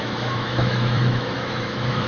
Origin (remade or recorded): remade